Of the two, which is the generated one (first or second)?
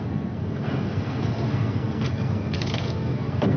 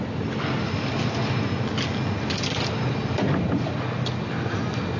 first